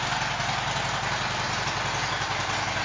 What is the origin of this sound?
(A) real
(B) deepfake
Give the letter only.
A